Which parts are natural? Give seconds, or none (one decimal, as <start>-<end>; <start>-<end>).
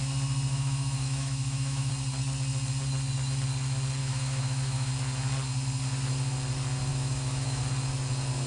0.0-0.5; 1.9-4.0; 4.9-6.9; 7.6-8.5